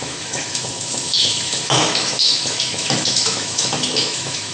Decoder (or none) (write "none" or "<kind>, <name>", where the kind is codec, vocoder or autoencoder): autoencoder, DAC-VAE